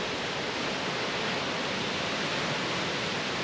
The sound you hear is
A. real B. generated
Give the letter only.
A